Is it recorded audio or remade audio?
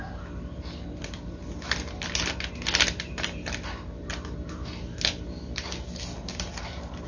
recorded